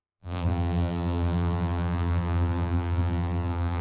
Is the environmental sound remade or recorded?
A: remade